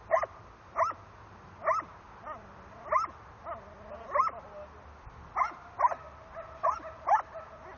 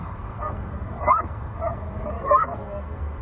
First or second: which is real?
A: first